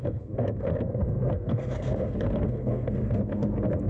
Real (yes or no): no